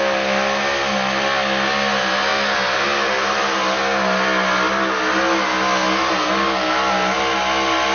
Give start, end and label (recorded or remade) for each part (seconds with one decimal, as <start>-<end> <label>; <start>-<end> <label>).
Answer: 0.0-7.9 recorded